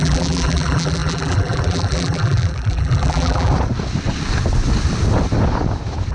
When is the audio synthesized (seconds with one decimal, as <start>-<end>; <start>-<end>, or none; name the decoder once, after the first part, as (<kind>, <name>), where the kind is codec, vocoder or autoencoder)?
0.0-3.5 (vocoder, BigVGAN v2)